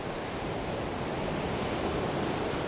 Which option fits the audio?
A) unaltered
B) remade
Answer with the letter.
A